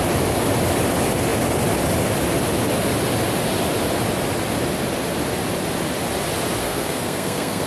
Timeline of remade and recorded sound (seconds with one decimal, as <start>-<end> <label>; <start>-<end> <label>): 0.0-6.6 recorded; 6.6-7.7 remade